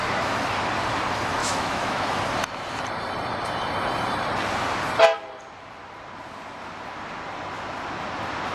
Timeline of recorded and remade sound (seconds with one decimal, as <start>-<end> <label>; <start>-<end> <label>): 0.0-1.4 recorded; 1.4-2.1 remade; 2.1-8.5 recorded